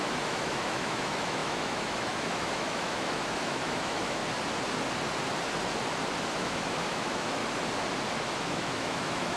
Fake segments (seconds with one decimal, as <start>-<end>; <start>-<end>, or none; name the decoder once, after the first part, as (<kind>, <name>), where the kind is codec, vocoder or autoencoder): 0.0-4.2 (autoencoder, DAC-VAE); 6.3-7.4; 8.4-9.4